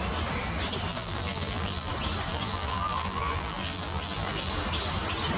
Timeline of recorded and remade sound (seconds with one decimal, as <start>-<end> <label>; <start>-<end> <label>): 0.0-0.9 recorded; 0.9-1.9 remade; 1.9-2.3 recorded; 2.3-4.5 remade; 4.5-5.4 recorded